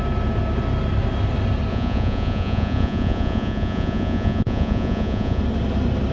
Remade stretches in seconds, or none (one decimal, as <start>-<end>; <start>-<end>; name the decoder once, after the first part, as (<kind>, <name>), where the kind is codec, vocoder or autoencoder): 1.7-5.4 (vocoder, Vocos)